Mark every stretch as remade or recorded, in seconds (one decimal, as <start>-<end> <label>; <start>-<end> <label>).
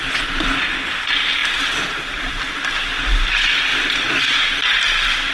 0.0-1.4 recorded; 1.4-2.4 remade; 2.4-5.3 recorded